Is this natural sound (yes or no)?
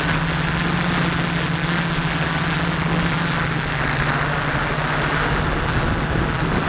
yes